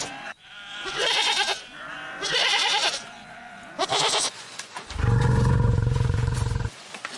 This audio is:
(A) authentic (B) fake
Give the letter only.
B